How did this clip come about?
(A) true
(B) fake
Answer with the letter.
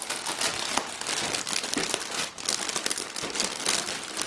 A